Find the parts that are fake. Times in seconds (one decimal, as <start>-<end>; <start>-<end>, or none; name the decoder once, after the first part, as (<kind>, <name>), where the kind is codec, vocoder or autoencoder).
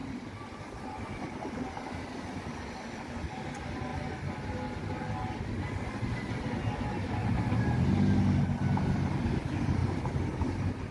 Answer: 0.0-3.1 (vocoder, BigVGAN v2)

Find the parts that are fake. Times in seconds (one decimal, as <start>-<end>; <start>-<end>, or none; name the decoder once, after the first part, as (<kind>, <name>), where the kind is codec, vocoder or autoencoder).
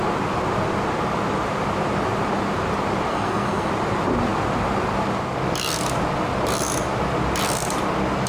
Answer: 3.1-3.7 (codec, SNAC)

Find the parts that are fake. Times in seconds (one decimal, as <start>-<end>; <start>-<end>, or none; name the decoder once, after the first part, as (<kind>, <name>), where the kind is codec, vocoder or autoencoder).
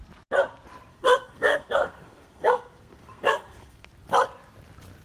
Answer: 0.9-3.9 (codec, SNAC)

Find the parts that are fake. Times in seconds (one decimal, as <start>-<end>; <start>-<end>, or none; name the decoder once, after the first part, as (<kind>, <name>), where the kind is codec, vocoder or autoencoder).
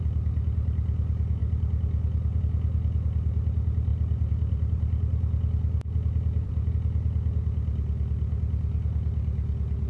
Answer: 1.4-2.4 (vocoder, BigVGAN v2); 3.9-6.7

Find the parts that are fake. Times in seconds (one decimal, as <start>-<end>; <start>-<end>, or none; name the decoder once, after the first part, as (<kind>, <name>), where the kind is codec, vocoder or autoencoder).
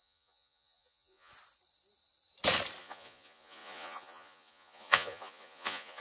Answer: 0.0-1.3 (vocoder, Vocos); 2.8-6.0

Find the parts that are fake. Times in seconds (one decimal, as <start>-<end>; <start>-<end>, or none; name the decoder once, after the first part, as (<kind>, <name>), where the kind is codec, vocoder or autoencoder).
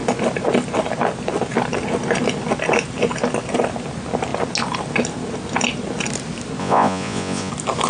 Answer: 6.6-7.5 (vocoder, Vocos)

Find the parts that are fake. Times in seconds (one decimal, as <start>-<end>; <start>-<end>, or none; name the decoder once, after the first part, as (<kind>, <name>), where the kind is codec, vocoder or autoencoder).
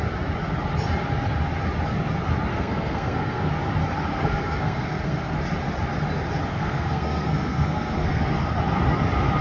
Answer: 2.5-3.5 (codec, SNAC); 4.1-5.4; 6.5-8.2